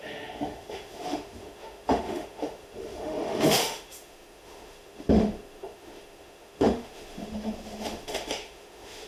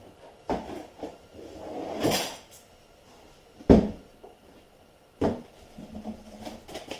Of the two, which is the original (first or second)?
second